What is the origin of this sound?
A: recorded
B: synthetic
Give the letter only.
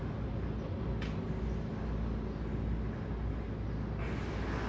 A